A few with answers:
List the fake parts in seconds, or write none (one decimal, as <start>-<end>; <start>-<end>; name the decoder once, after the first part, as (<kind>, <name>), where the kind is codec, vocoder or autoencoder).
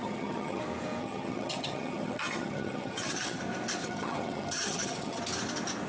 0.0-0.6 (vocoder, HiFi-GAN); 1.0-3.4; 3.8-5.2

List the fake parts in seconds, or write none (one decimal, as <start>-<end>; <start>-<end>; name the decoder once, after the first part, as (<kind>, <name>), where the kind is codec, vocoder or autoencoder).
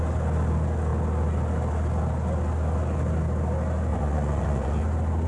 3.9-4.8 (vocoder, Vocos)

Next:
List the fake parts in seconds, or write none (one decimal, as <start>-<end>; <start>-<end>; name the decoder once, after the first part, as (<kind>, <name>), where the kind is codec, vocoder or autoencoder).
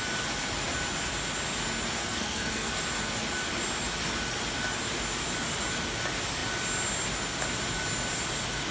2.0-2.8 (codec, SNAC)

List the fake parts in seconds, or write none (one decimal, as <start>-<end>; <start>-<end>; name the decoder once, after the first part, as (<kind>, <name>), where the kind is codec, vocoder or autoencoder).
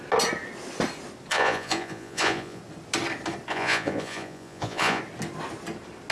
1.3-2.6 (vocoder, Vocos); 3.5-5.0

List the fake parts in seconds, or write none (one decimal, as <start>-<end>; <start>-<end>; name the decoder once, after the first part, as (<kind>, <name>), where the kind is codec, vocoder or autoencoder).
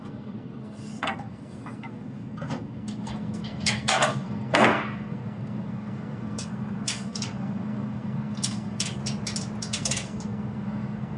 0.0-9.0 (codec, SNAC); 9.6-11.2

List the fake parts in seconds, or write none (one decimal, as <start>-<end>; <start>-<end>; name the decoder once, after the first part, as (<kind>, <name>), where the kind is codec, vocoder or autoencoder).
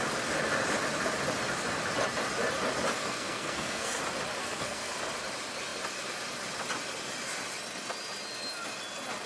3.0-4.0 (codec, SNAC); 4.4-4.9